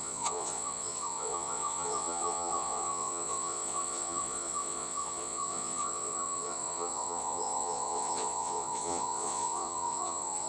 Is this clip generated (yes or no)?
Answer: yes